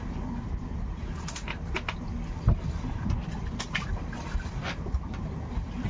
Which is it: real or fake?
real